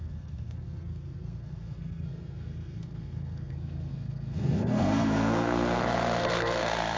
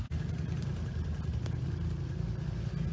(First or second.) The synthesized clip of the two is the first